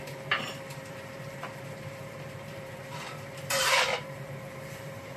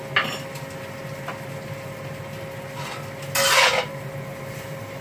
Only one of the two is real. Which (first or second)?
second